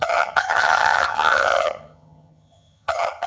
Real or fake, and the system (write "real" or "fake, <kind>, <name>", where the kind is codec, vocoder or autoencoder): fake, vocoder, HiFi-GAN